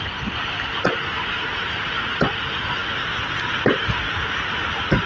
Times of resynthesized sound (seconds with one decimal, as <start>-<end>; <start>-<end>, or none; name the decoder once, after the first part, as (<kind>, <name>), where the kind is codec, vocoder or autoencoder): 2.8-5.1 (vocoder, BigVGAN v2)